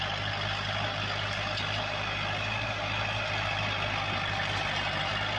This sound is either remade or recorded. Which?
recorded